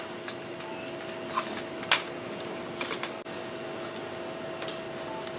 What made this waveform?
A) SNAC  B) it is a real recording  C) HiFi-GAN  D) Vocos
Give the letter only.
B